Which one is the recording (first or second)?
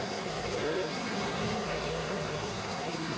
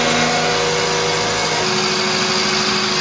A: second